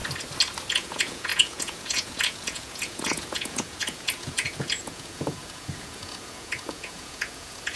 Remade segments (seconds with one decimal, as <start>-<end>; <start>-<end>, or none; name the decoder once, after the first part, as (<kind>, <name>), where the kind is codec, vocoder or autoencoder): 0.7-7.8 (vocoder, Vocos)